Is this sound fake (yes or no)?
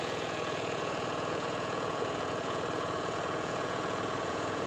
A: yes